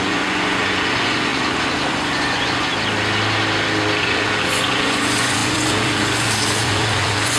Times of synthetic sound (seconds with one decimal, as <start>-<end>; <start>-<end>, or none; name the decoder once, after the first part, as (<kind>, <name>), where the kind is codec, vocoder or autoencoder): 0.0-2.7 (vocoder, Vocos); 4.0-7.4